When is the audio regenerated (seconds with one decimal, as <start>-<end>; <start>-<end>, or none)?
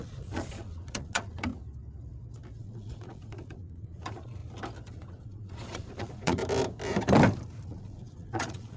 0.0-1.5; 2.6-4.4; 4.9-6.4; 7.7-8.8